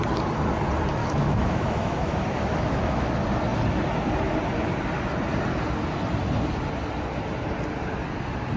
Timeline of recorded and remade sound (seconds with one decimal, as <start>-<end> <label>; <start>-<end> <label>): 0.0-1.0 recorded; 1.0-3.1 remade; 3.1-8.6 recorded

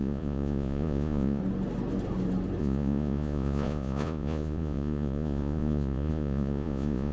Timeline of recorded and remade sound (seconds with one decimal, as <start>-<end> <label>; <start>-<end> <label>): 0.0-1.4 remade; 1.4-2.6 recorded; 2.6-7.1 remade

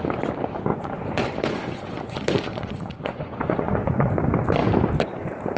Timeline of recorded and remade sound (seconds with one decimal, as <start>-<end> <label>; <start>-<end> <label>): 0.0-0.7 recorded; 0.7-4.1 remade; 4.1-5.6 recorded

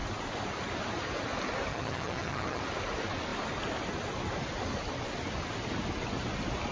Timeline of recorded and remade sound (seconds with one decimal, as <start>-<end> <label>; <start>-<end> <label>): 0.0-1.7 recorded; 1.7-2.6 remade; 2.6-6.7 recorded

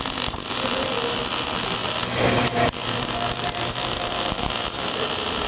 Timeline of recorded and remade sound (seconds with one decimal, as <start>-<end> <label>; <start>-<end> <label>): 0.0-5.5 recorded